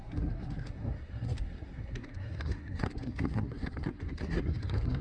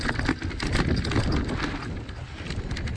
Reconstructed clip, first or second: first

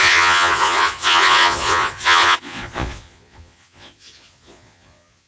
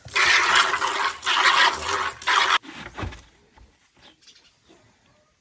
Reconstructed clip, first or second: first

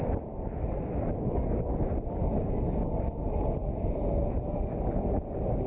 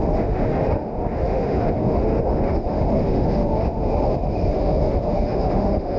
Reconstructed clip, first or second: second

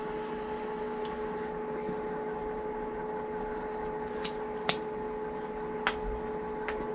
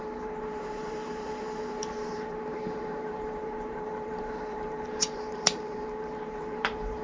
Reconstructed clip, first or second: second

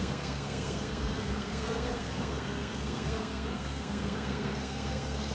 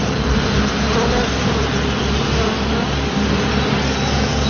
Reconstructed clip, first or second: first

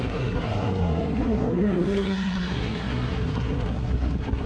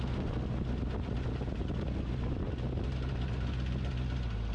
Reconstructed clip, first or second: first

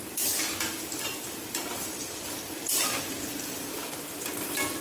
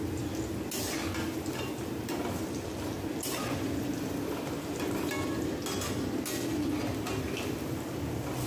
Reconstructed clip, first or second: first